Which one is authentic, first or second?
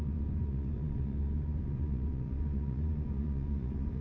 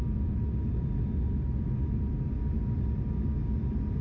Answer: second